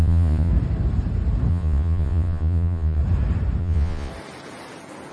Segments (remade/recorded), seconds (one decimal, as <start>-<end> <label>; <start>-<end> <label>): 0.0-0.5 remade; 0.5-1.5 recorded; 1.5-3.0 remade; 3.0-3.6 recorded; 3.6-4.1 remade; 4.1-5.1 recorded